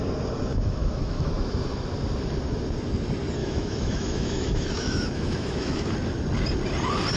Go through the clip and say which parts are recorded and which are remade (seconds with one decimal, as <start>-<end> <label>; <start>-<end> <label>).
0.0-0.5 recorded; 0.5-1.3 remade; 1.3-3.4 recorded; 3.4-5.9 remade; 5.9-7.2 recorded